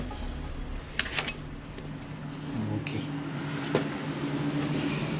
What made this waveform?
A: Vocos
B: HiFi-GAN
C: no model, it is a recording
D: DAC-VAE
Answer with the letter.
C